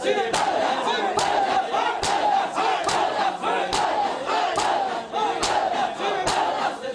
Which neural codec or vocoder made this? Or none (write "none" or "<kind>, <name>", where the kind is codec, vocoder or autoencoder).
none